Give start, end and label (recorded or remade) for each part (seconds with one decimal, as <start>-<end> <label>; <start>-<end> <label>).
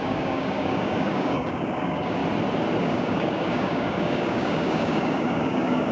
0.0-2.2 remade; 2.2-2.8 recorded; 2.8-5.9 remade